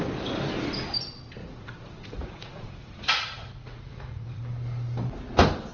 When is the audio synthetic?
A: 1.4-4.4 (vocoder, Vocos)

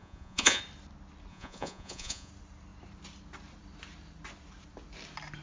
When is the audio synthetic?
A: 0.0-0.6 (vocoder, Vocos); 1.3-2.3

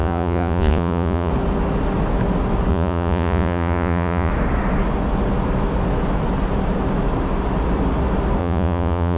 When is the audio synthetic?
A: 0.0-1.3 (vocoder, Vocos); 2.7-4.3; 8.4-9.2

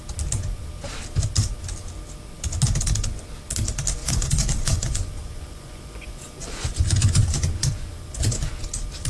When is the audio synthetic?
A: 4.0-8.6 (vocoder, Vocos)